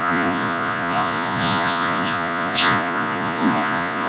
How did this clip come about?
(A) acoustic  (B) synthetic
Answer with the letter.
B